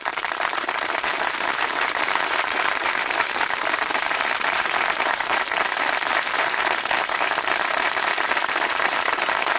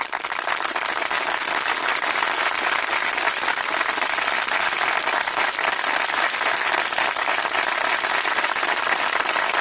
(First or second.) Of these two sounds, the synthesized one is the first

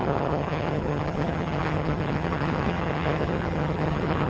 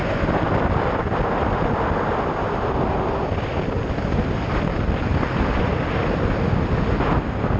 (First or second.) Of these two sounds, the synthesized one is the first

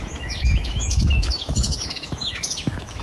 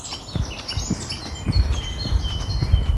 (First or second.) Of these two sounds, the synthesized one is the first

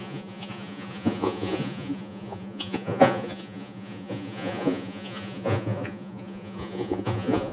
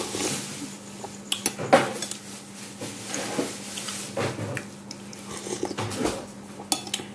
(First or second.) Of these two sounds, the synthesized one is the first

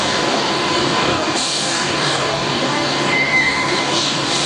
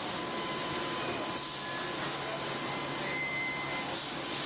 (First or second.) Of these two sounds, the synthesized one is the first